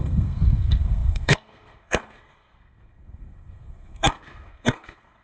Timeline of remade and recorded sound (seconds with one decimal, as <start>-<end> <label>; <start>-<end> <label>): 0.0-5.2 remade